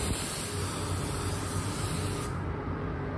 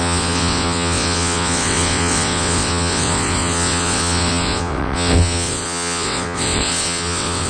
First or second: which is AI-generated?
second